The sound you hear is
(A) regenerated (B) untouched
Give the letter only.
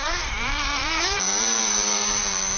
A